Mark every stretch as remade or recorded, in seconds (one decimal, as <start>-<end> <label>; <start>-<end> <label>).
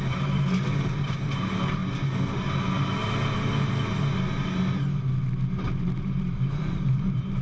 0.0-1.8 remade; 1.8-5.7 recorded; 5.7-7.4 remade